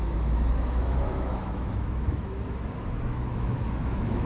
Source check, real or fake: fake